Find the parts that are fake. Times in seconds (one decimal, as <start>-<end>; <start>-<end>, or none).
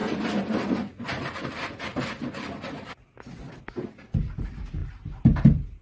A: none